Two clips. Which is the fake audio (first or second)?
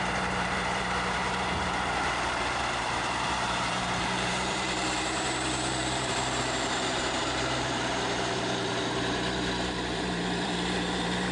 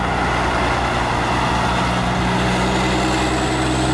first